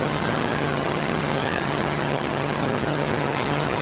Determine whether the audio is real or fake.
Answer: fake